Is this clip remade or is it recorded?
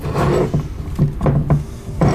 recorded